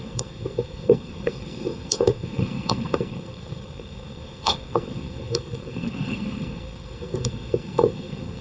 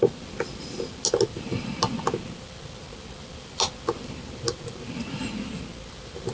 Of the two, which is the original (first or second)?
second